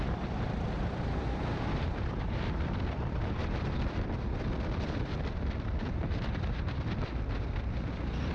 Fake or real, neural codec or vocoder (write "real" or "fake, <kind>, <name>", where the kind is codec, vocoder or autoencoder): fake, vocoder, BigVGAN v2